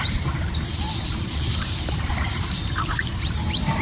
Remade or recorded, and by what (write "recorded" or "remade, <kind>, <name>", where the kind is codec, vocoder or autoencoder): remade, vocoder, BigVGAN v2